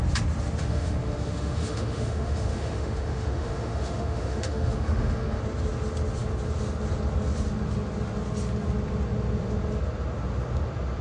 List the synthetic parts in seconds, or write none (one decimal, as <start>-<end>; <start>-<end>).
0.6-5.4